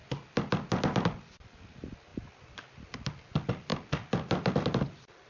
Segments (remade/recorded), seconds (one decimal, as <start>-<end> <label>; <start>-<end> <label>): 0.0-5.3 recorded